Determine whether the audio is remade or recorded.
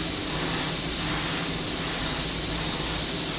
recorded